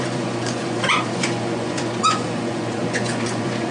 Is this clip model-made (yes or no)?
yes